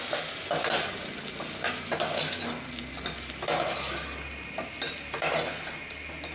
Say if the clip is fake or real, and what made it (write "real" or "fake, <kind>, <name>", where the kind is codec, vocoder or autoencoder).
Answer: real